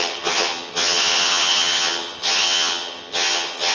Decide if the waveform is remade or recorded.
remade